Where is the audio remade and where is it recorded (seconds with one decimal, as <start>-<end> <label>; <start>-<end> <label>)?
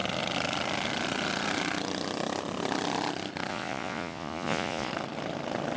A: 0.0-3.5 recorded; 3.5-4.9 remade; 4.9-5.8 recorded